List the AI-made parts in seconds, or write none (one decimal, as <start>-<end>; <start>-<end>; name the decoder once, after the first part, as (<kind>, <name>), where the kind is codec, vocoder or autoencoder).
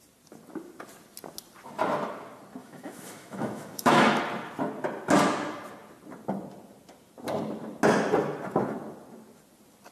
2.6-4.2 (autoencoder, DAC-VAE)